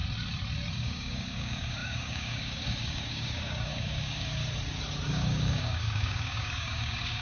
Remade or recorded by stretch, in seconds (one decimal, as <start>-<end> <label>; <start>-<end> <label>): 0.0-0.7 recorded; 0.7-4.4 remade; 4.4-5.1 recorded; 5.1-7.2 remade